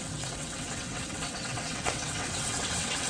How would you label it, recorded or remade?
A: remade